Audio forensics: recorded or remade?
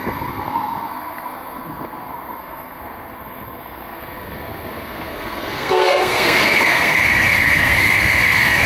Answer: remade